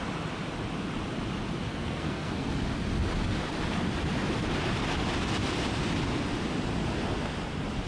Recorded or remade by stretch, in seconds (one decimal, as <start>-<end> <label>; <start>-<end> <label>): 0.0-1.7 recorded; 1.7-2.5 remade; 2.5-7.9 recorded